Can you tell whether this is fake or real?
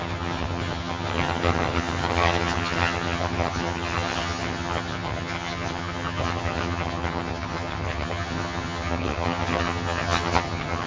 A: fake